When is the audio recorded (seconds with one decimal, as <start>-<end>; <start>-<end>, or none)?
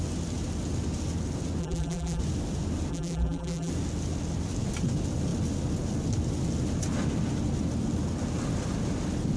0.0-1.6; 2.2-2.9; 3.7-9.4